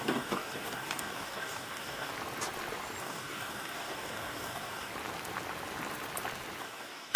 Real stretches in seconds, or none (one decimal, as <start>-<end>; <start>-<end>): 2.1-3.0; 4.9-6.6